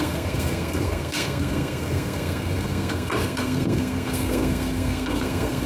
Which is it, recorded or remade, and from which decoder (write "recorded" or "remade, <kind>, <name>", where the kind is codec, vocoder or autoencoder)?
remade, codec, SNAC